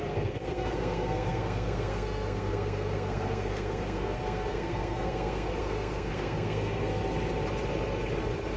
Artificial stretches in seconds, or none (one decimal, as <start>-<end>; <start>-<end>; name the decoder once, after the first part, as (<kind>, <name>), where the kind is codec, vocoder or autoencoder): 0.0-7.0 (codec, SNAC)